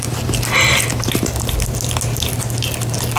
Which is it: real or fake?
real